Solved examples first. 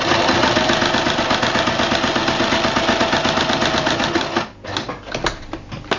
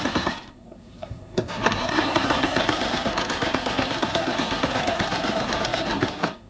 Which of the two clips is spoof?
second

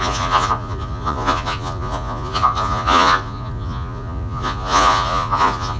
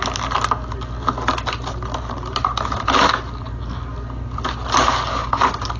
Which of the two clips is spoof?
first